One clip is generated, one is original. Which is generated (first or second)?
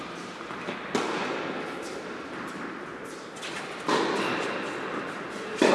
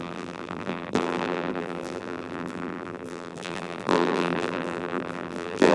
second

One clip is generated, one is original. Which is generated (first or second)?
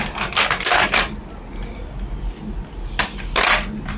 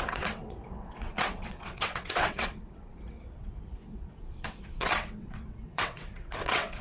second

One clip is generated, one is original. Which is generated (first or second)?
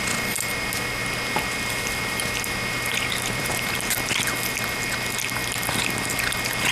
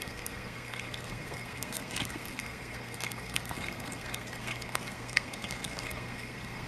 second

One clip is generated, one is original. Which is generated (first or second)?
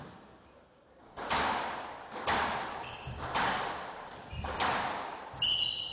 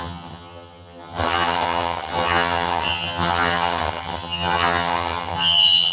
second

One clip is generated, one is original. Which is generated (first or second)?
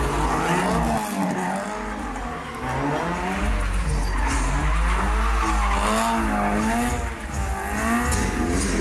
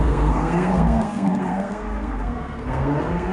second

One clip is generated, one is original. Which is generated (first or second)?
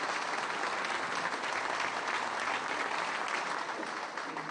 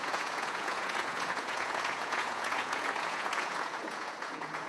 second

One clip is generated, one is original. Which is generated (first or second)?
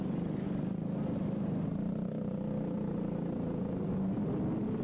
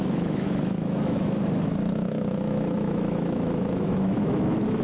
second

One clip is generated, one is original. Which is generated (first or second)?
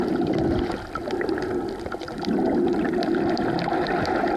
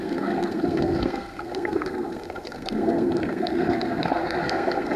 second